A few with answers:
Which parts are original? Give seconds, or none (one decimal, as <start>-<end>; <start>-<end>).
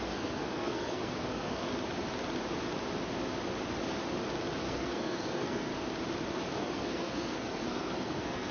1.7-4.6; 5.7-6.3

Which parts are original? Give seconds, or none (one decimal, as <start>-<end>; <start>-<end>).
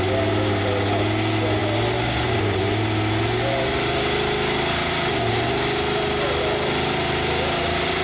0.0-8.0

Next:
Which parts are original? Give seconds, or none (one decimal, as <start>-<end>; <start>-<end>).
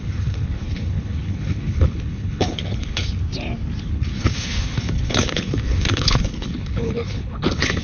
3.2-3.8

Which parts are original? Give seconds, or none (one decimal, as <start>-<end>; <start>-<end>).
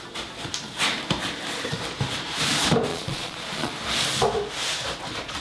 0.0-2.9; 3.7-5.4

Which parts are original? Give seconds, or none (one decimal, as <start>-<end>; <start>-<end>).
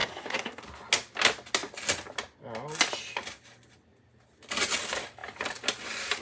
0.6-6.2